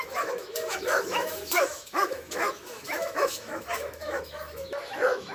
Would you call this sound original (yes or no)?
no